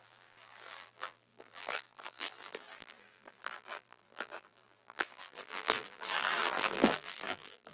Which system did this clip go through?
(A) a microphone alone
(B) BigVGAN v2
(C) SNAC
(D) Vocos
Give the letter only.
B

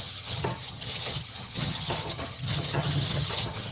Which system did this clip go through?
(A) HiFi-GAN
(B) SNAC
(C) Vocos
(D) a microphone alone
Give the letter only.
A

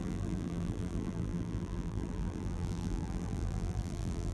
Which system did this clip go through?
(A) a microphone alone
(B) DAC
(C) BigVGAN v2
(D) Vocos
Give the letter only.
C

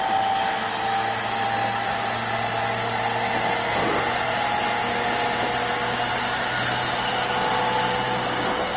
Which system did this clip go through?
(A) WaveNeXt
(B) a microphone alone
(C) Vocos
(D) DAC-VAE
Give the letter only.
B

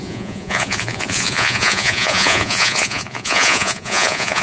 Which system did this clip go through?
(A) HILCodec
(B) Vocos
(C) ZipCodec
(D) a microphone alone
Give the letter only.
B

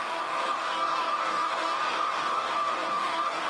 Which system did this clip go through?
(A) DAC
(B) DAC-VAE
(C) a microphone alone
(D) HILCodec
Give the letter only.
A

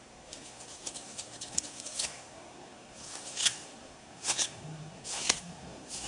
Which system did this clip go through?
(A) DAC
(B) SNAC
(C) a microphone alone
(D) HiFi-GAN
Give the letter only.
B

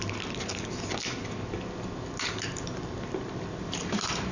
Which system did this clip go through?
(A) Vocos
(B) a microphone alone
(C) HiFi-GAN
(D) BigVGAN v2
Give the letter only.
B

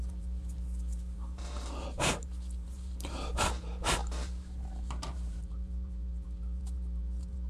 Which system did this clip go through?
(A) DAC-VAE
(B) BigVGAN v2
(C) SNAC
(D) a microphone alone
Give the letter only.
B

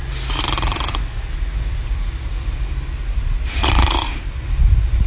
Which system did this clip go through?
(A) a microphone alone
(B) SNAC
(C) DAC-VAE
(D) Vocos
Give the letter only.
A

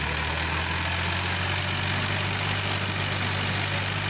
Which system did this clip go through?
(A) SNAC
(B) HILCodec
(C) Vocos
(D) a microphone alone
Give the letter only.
D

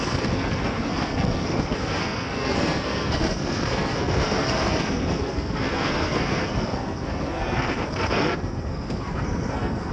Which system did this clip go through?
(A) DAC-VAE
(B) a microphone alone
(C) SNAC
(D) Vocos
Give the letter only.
C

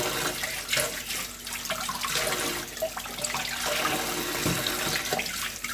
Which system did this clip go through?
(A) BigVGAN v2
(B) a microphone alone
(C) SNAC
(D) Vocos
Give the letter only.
B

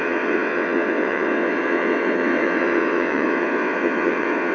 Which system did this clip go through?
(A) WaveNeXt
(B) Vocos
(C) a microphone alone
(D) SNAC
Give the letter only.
A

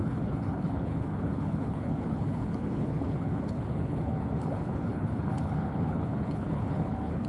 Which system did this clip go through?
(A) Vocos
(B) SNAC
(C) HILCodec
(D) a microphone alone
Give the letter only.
C